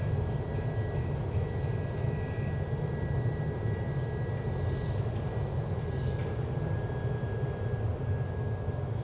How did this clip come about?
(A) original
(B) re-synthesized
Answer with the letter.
A